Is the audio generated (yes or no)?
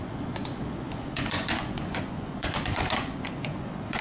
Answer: yes